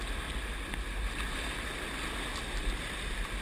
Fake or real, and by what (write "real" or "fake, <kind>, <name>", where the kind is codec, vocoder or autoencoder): real